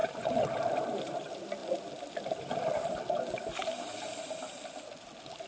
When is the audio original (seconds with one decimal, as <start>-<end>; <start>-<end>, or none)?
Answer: 1.2-5.5